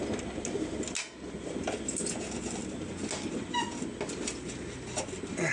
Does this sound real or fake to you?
real